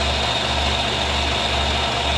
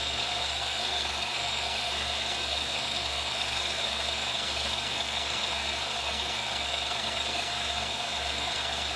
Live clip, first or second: first